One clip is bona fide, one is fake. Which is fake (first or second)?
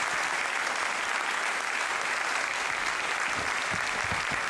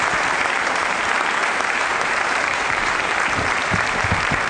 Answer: second